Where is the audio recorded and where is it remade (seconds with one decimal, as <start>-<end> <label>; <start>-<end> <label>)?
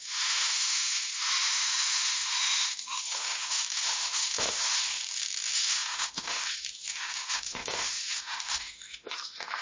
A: 0.0-9.6 remade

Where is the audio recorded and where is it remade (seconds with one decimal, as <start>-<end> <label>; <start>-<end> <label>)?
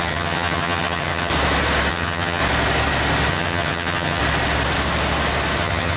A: 0.0-1.3 remade; 1.3-1.9 recorded; 1.9-2.4 remade; 2.4-3.3 recorded; 3.3-4.2 remade; 4.2-5.6 recorded; 5.6-6.0 remade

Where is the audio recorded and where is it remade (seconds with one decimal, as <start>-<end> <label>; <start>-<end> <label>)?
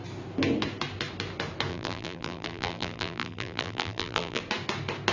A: 0.0-1.7 recorded; 1.7-4.4 remade; 4.4-5.1 recorded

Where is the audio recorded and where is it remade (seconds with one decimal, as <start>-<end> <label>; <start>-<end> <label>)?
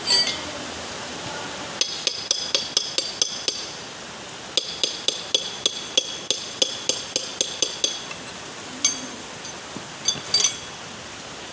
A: 0.0-11.5 recorded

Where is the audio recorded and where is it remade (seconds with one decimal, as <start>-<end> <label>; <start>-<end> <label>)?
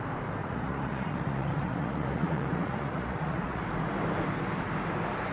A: 0.0-0.4 recorded; 0.4-3.6 remade; 3.6-5.3 recorded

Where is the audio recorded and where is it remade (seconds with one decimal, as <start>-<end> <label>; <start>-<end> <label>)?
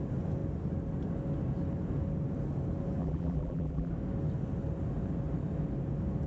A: 0.0-3.0 recorded; 3.0-3.9 remade; 3.9-6.3 recorded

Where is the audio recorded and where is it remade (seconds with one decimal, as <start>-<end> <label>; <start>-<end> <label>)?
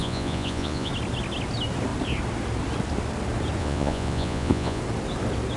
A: 0.0-0.9 remade; 0.9-3.6 recorded; 3.6-4.8 remade; 4.8-5.6 recorded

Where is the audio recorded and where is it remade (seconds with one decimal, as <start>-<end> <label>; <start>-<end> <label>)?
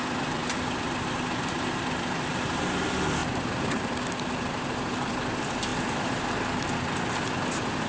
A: 0.0-2.4 remade; 2.4-7.9 recorded